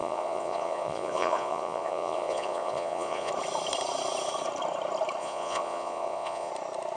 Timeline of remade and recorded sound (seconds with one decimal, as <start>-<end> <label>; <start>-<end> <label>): 0.0-3.3 remade; 3.3-5.2 recorded; 5.2-6.5 remade; 6.5-7.0 recorded